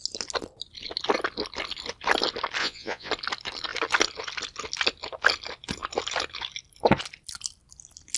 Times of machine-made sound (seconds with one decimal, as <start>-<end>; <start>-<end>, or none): 2.6-3.1